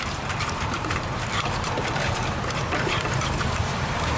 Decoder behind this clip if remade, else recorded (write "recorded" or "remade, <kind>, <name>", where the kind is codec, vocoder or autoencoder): remade, vocoder, BigVGAN v2